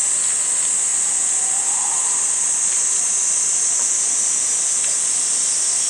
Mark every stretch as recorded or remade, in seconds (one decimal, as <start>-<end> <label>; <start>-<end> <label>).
0.0-5.9 recorded